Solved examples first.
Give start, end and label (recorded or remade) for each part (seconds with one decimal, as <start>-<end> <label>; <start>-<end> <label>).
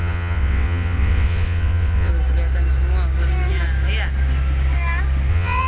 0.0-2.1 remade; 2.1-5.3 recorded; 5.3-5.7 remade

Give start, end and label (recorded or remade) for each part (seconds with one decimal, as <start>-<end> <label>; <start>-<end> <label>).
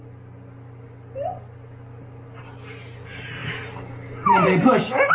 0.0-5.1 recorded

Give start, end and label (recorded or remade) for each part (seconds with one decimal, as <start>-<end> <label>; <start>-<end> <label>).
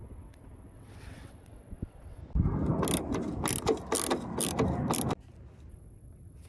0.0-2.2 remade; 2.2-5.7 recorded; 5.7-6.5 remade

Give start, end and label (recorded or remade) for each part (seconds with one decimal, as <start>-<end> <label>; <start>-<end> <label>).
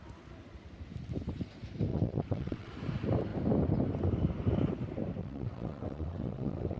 0.0-1.9 recorded; 1.9-2.7 remade; 2.7-5.2 recorded; 5.2-6.8 remade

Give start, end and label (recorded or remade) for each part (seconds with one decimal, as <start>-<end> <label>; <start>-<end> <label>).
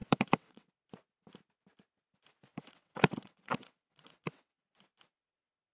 0.0-0.7 remade; 0.7-2.5 recorded; 2.5-4.6 remade; 4.6-5.7 recorded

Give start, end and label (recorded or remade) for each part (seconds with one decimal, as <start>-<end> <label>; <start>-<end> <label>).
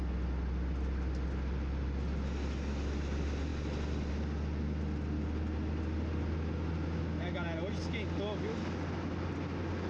0.0-9.9 recorded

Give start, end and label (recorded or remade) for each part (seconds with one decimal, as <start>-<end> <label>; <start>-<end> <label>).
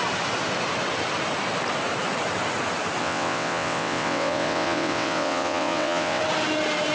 0.0-3.0 recorded; 3.0-6.2 remade; 6.2-6.9 recorded